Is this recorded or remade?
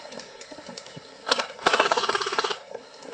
remade